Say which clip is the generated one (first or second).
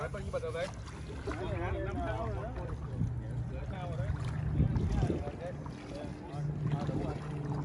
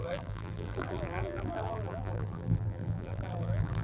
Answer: second